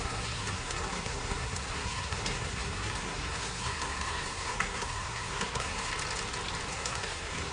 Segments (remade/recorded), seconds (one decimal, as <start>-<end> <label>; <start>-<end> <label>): 0.0-5.9 remade; 5.9-6.7 recorded; 6.7-7.5 remade